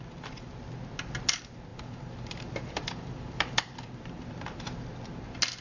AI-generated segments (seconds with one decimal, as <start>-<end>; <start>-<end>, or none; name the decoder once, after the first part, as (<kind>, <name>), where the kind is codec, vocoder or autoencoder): 1.7-4.3 (vocoder, BigVGAN v2)

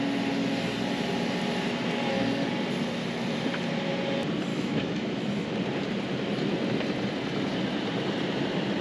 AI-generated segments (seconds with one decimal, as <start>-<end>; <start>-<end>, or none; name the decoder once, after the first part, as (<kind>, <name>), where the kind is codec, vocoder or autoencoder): 4.5-5.5 (autoencoder, DAC-VAE)

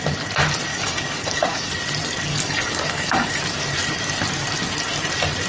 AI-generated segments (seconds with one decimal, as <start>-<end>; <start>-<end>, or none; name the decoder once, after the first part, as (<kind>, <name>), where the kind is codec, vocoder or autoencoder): 0.7-1.7 (codec, DAC); 2.3-3.4

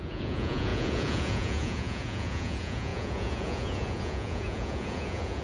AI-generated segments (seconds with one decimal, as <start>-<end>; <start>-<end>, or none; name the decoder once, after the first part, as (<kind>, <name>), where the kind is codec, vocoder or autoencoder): 0.0-5.4 (vocoder, Vocos)

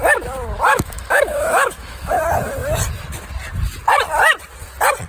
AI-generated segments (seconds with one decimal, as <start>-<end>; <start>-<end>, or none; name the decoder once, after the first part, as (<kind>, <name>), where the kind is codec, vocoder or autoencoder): 0.7-2.2 (autoencoder, DAC-VAE)

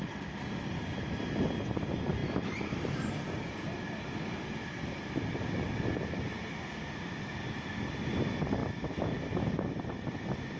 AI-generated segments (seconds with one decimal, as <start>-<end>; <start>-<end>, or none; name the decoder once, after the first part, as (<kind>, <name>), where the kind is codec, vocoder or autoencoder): none

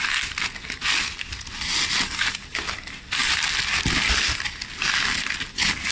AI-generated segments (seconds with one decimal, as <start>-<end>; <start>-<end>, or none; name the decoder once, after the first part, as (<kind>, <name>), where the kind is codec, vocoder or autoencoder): none

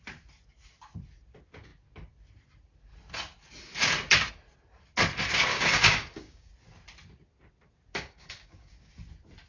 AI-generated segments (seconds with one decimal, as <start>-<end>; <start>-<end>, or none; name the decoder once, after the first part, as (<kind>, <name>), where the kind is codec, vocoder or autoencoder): 5.5-6.5 (codec, DAC); 7.9-8.9